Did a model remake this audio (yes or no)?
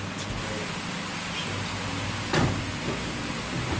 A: no